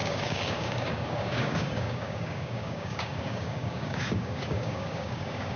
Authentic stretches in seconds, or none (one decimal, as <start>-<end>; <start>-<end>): none